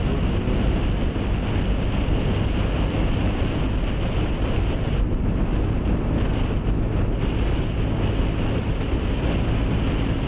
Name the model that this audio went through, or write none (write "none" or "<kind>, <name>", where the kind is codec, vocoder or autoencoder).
none